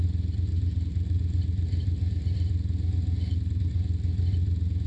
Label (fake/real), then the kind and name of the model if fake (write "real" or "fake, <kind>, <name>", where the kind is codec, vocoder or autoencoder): real